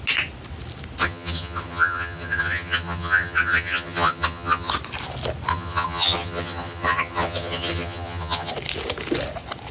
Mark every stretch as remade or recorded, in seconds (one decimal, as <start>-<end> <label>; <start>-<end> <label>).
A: 0.0-1.0 recorded; 1.0-4.7 remade; 4.7-5.5 recorded; 5.5-8.5 remade; 8.5-9.7 recorded